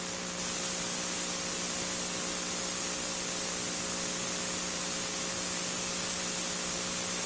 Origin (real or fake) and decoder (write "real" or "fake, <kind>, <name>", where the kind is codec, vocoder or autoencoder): real